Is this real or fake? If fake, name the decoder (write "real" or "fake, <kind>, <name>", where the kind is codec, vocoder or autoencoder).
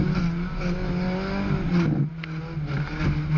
real